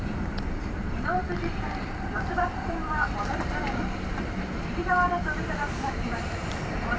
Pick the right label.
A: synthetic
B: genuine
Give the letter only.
A